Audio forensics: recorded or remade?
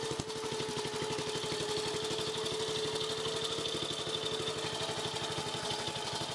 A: recorded